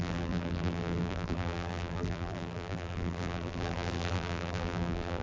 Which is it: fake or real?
fake